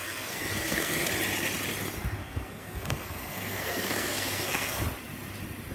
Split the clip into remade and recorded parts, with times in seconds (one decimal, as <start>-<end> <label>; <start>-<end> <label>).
0.0-1.1 remade; 1.1-2.2 recorded; 2.2-4.8 remade; 4.8-5.7 recorded